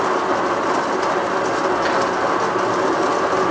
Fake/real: real